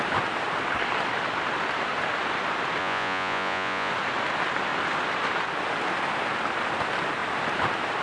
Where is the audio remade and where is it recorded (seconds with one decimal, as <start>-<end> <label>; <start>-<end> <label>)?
0.0-2.8 recorded; 2.8-3.9 remade; 3.9-8.0 recorded